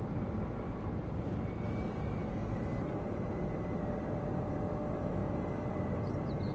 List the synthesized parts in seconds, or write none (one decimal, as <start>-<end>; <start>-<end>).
none